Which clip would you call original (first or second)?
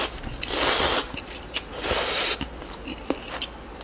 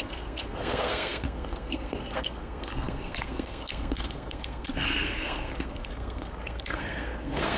first